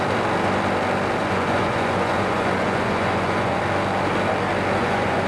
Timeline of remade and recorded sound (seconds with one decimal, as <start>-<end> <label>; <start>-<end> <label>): 0.0-1.2 recorded; 1.2-3.6 remade; 3.6-4.8 recorded; 4.8-5.3 remade